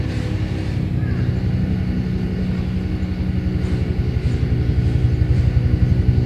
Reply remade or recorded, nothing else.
recorded